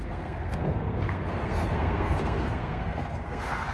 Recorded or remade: remade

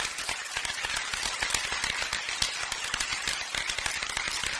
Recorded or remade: recorded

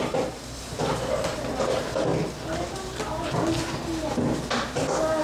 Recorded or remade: recorded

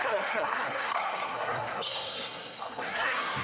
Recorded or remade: remade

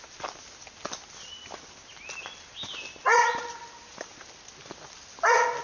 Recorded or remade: recorded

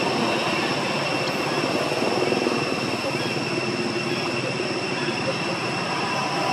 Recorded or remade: recorded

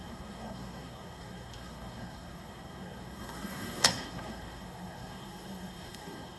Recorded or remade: remade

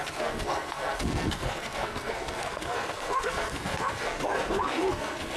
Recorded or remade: remade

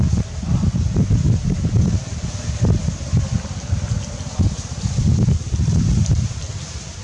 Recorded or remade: recorded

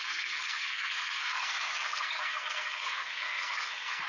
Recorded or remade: remade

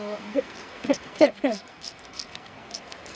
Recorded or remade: remade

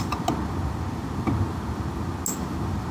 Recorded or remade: recorded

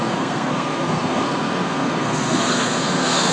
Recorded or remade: remade